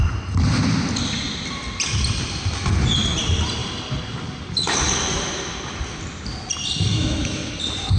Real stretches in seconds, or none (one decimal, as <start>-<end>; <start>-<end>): 0.0-6.9; 7.5-8.0